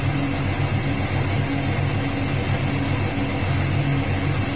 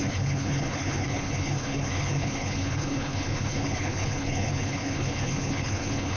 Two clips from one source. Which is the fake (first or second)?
second